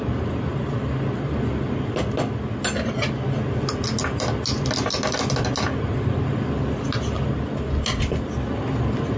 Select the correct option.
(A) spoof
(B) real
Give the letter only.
B